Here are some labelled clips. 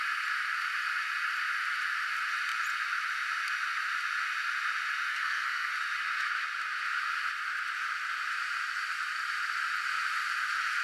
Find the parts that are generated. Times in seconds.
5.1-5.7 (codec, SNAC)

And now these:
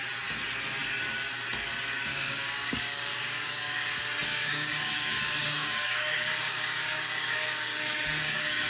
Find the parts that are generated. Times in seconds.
2.1-3.9 (codec, DAC); 4.3-8.7

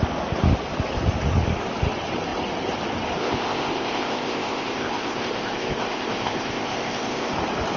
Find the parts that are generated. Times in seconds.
3.2-7.3 (codec, ZipCodec)

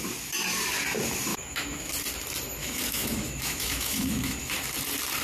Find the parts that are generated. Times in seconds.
1.3-1.9 (autoencoder, DAC-VAE); 2.6-4.4